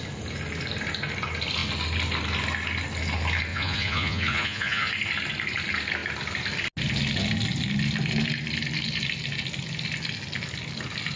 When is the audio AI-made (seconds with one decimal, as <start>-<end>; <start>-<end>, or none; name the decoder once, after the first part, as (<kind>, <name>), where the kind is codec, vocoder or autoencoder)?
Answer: 3.5-4.9 (vocoder, Vocos)